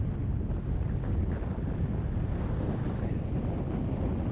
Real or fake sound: real